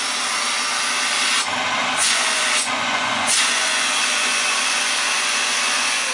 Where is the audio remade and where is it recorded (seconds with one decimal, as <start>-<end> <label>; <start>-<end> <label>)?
0.0-2.0 recorded; 2.0-6.1 remade